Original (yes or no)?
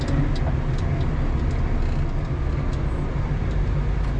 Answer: yes